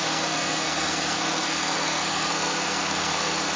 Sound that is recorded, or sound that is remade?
remade